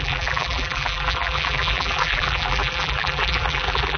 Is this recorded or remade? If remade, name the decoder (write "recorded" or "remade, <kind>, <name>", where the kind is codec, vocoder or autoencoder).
remade, vocoder, BigVGAN v2